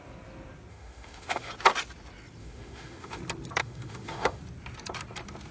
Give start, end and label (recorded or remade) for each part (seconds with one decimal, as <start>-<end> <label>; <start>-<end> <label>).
0.0-0.7 recorded; 0.7-1.5 remade; 1.5-2.4 recorded; 2.4-3.2 remade; 3.2-3.6 recorded; 3.6-4.4 remade; 4.4-5.5 recorded